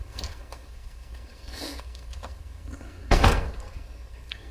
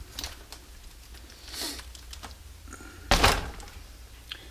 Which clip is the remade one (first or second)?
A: first